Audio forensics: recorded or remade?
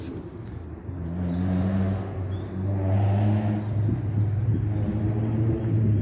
recorded